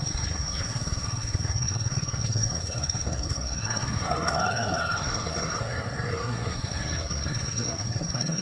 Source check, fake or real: fake